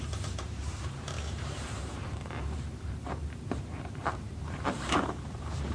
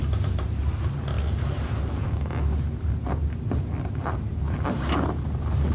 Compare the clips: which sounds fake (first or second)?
first